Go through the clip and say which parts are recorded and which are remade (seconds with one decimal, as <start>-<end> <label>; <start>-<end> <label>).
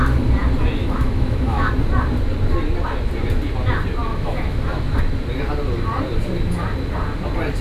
0.0-0.8 recorded; 0.8-1.7 remade; 1.7-4.1 recorded; 4.1-5.0 remade; 5.0-7.6 recorded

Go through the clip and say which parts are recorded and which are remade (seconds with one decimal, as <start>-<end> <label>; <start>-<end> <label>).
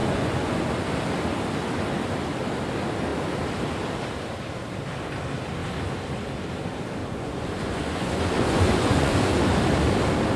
0.0-0.6 remade; 0.6-7.0 recorded; 7.0-9.3 remade; 9.3-10.4 recorded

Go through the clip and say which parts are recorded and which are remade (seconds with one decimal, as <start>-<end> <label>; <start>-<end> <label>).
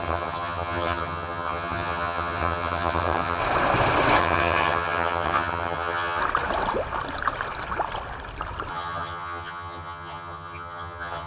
0.0-3.4 remade; 3.4-4.2 recorded; 4.2-6.2 remade; 6.2-8.7 recorded; 8.7-11.3 remade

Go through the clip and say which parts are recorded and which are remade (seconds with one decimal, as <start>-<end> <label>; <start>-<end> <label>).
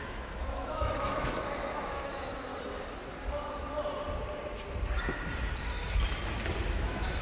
0.0-2.5 remade; 2.5-6.7 recorded; 6.7-7.2 remade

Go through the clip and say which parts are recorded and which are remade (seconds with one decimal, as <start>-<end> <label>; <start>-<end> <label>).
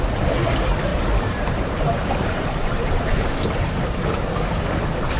0.0-0.9 recorded; 0.9-4.0 remade; 4.0-5.2 recorded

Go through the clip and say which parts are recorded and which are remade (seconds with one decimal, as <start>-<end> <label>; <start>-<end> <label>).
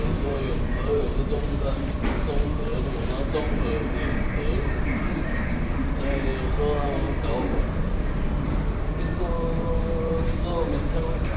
0.0-6.3 remade; 6.3-7.6 recorded; 7.6-11.4 remade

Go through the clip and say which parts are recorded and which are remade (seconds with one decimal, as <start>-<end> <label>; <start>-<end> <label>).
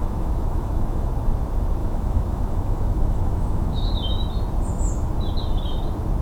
0.0-1.1 remade; 1.1-1.8 recorded; 1.8-3.9 remade; 3.9-6.2 recorded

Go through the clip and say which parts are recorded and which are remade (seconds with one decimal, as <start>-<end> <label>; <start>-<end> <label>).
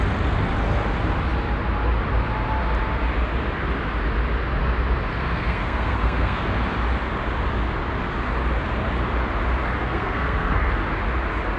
0.0-5.1 recorded; 5.1-6.4 remade; 6.4-9.8 recorded; 9.8-10.7 remade; 10.7-11.6 recorded